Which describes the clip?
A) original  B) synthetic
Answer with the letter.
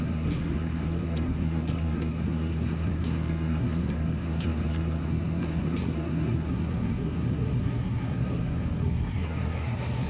B